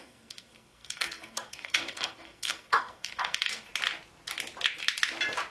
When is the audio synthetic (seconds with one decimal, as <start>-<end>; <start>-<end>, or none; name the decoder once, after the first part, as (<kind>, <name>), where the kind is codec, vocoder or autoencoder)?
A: 0.0-3.7 (codec, SNAC)